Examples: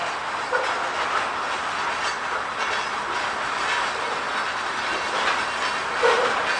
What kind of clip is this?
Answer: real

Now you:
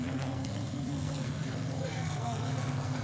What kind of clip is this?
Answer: fake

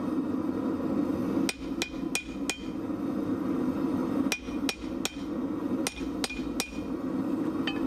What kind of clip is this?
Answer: real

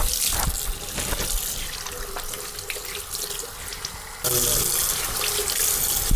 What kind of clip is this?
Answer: real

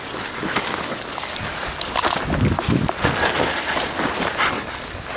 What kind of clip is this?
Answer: real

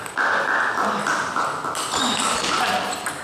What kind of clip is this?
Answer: real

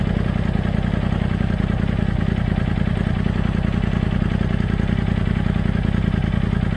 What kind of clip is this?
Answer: real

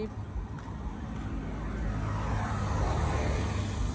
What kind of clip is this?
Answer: real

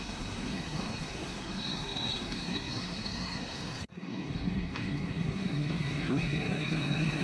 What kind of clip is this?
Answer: fake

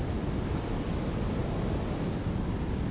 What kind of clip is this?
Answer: real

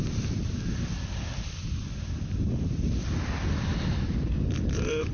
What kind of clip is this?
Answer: real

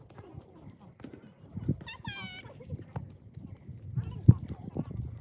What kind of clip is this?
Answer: real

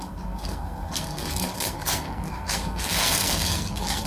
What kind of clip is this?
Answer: fake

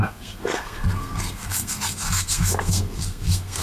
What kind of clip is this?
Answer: fake